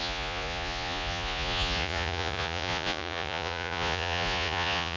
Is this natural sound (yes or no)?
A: no